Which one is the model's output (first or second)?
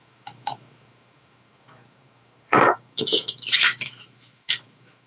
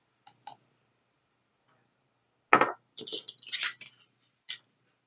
first